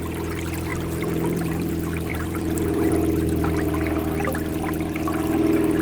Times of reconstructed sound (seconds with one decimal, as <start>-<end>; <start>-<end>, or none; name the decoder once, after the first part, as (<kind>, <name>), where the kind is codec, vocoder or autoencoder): 0.7-1.7 (vocoder, BigVGAN v2); 2.1-2.9